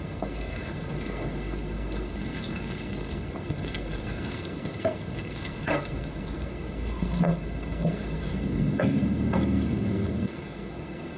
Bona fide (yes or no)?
no